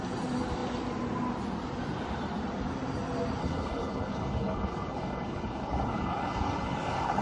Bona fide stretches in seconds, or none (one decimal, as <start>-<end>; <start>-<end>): 0.0-3.4